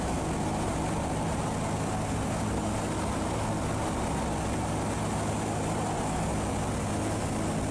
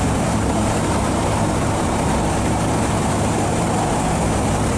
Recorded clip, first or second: first